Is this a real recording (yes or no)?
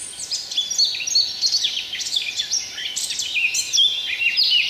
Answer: yes